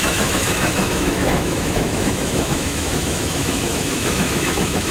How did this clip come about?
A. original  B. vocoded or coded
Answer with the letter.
B